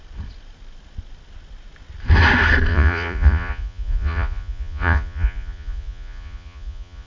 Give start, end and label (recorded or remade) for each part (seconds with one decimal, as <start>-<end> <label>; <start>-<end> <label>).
0.0-2.7 recorded; 2.7-7.1 remade